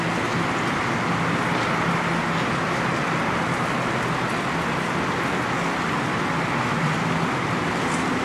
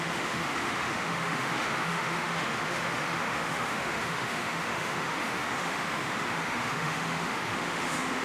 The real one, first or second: first